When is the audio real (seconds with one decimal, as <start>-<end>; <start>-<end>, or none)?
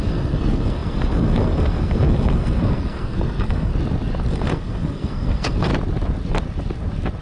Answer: 3.7-4.3; 5.7-7.2